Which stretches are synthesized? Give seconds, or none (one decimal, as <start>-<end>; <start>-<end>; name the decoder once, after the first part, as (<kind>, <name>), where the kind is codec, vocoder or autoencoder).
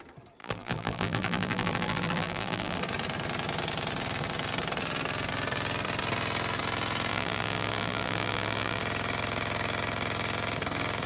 0.4-2.8 (vocoder, BigVGAN v2); 7.1-8.8